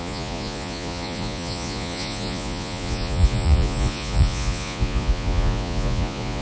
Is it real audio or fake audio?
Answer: fake